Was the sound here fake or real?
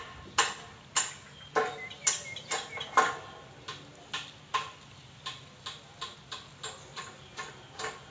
real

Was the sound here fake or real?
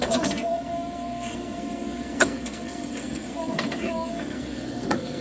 fake